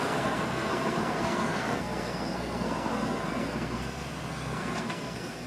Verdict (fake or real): fake